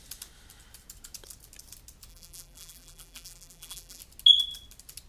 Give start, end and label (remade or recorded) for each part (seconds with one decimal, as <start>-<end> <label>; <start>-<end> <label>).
0.0-2.1 recorded; 2.1-4.0 remade; 4.0-5.1 recorded